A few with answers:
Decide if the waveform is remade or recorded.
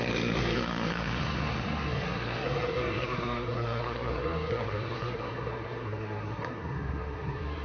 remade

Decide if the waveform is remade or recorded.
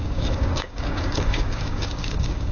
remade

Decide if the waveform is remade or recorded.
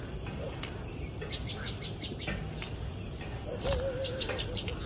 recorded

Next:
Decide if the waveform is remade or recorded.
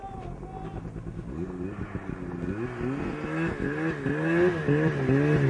recorded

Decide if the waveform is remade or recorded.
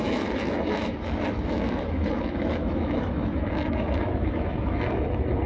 remade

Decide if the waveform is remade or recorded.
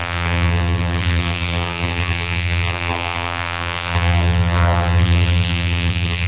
remade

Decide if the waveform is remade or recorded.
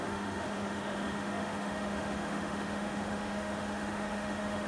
remade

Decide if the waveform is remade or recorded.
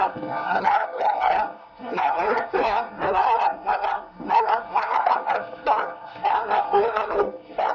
remade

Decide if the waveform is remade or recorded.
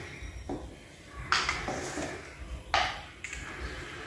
recorded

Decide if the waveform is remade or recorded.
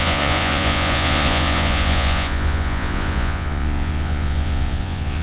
remade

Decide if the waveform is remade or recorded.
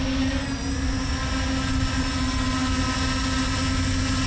recorded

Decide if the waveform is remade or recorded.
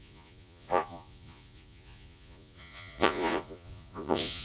remade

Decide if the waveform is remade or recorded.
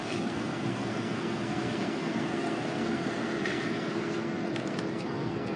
remade